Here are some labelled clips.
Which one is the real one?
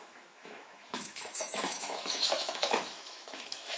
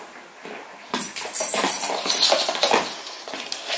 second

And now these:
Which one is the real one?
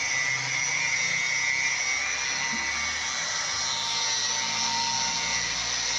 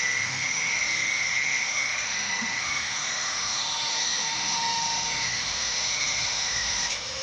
first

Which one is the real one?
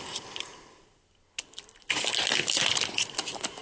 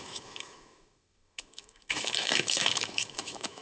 first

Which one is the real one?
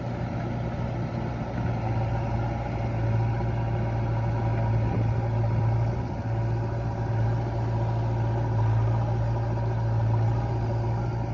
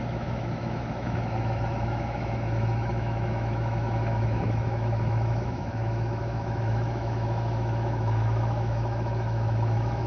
first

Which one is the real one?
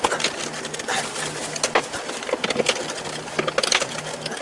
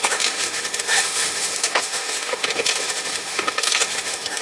first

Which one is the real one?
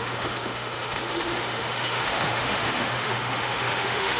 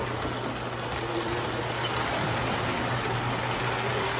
second